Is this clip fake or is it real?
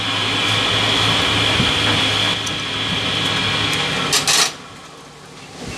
real